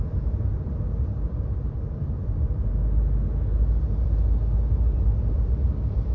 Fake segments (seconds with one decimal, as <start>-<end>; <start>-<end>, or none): 0.0-2.8; 5.3-6.1